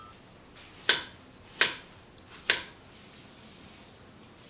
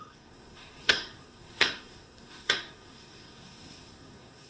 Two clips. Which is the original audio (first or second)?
first